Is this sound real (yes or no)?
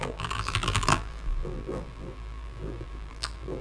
no